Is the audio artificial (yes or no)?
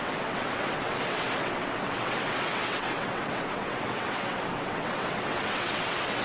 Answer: yes